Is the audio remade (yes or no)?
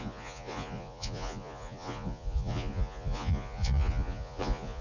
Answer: yes